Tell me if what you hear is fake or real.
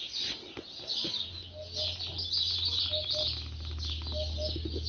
real